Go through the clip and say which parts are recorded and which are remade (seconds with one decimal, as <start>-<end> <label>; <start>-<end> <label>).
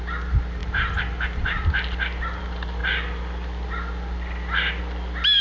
0.0-5.4 recorded